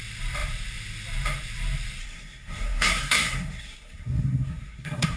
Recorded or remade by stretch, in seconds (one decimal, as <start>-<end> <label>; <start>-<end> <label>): 0.0-2.0 recorded; 2.0-5.2 remade